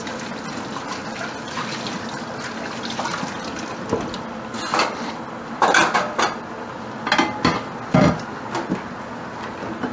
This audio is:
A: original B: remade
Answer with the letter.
A